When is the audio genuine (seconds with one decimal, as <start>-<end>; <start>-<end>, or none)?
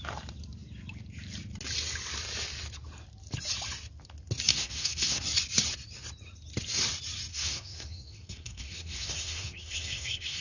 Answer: 0.0-4.5; 5.2-7.3